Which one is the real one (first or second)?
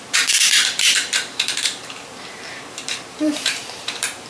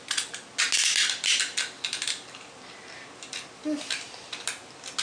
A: second